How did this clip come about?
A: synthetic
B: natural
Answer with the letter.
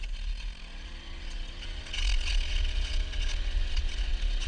A